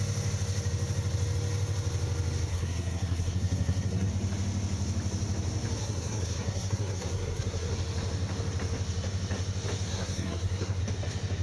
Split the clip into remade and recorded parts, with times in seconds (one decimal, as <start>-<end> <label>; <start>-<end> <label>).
0.0-2.5 recorded; 2.5-4.1 remade; 4.1-5.8 recorded; 5.8-7.7 remade; 7.7-9.9 recorded; 9.9-10.8 remade; 10.8-11.4 recorded